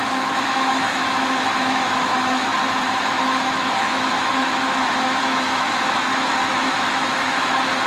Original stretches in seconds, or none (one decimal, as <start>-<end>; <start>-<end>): 2.5-3.0